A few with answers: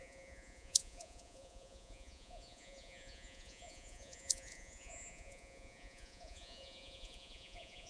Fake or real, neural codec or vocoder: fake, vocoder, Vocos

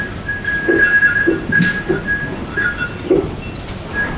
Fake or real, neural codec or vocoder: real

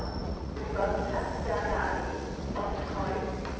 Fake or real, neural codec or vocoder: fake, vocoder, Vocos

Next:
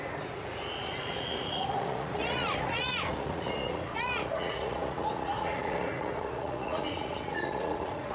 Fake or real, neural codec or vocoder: fake, vocoder, Vocos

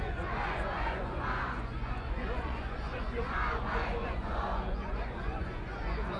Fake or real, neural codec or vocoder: fake, vocoder, Vocos